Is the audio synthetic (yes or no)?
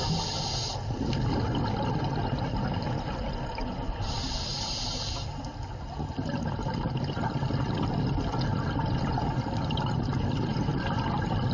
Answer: no